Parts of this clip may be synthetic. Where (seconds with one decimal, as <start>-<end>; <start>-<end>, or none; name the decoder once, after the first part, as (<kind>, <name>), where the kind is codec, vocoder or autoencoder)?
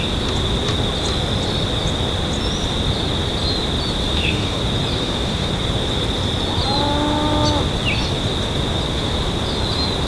4.0-4.6 (autoencoder, DAC-VAE); 5.0-5.5